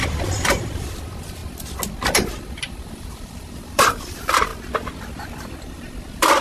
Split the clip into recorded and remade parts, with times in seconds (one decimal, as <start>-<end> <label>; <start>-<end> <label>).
0.0-1.4 remade; 1.4-2.6 recorded; 2.6-4.5 remade; 4.5-5.7 recorded; 5.7-6.4 remade

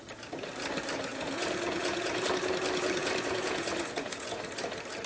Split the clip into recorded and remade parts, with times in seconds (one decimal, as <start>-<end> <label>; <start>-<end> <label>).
0.0-1.1 recorded; 1.1-2.2 remade; 2.2-3.0 recorded; 3.0-4.4 remade; 4.4-5.1 recorded